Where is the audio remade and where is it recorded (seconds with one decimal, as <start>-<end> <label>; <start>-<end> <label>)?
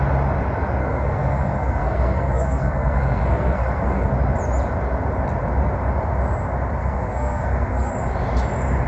0.0-0.8 recorded; 0.8-4.1 remade; 4.1-6.8 recorded; 6.8-7.9 remade; 7.9-8.9 recorded